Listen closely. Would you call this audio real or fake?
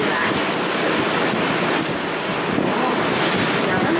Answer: real